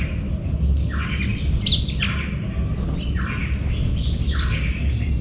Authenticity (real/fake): real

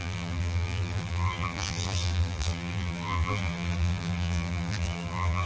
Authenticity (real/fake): fake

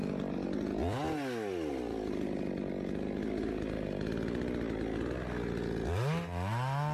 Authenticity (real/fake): real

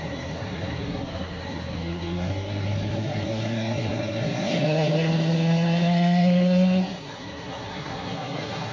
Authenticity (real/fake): fake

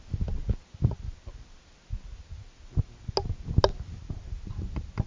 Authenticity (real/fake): real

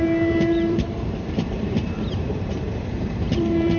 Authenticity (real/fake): fake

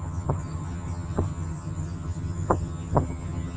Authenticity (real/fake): fake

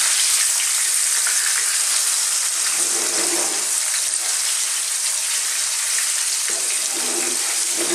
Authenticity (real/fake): fake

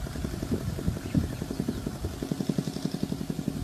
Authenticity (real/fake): real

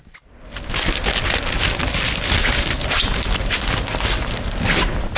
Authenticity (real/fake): real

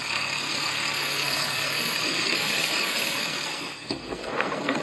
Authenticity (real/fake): fake